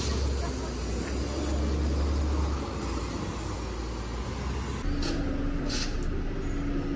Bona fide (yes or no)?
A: yes